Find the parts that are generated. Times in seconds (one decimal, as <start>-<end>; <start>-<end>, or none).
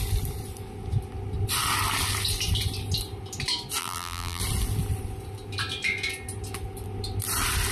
3.8-4.4